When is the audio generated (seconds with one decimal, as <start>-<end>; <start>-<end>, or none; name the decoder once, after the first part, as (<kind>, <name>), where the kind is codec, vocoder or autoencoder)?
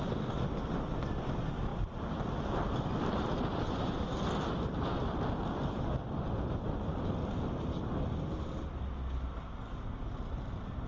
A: none